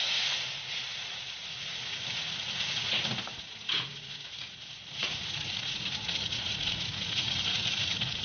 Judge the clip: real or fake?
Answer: fake